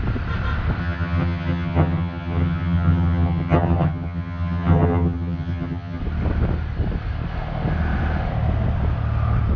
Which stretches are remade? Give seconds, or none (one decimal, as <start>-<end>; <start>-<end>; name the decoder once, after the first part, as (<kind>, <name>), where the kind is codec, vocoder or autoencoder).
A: 0.8-6.0 (vocoder, HiFi-GAN)